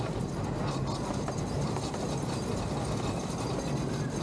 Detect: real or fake real